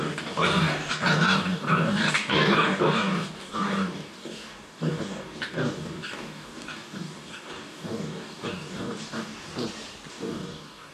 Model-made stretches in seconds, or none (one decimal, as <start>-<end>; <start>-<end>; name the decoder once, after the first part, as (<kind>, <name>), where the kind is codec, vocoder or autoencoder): 0.0-9.5 (codec, DAC); 10.1-10.9